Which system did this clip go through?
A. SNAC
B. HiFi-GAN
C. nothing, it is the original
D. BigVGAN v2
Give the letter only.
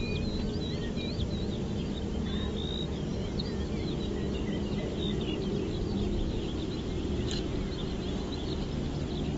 C